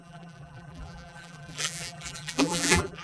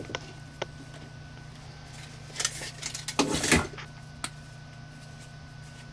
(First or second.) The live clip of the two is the second